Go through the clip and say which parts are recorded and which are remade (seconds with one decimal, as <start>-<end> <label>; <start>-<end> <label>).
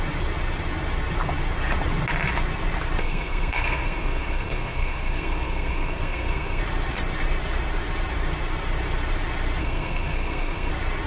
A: 0.0-3.0 recorded; 3.0-6.6 remade; 6.6-9.6 recorded; 9.6-10.7 remade; 10.7-11.1 recorded